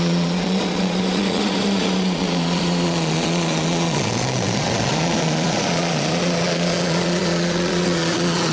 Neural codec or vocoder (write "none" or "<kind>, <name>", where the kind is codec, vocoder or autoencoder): vocoder, Vocos